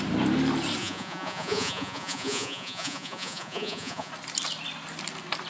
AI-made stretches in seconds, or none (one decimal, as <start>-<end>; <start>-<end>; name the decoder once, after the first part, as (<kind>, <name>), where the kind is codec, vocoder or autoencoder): 0.8-4.1 (vocoder, Vocos)